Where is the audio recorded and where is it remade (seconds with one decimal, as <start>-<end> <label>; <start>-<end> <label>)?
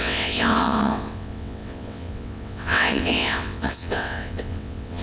0.0-5.0 remade